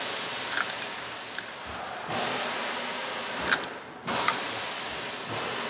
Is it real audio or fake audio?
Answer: real